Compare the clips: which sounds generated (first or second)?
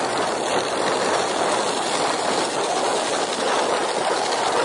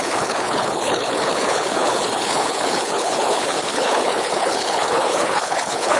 second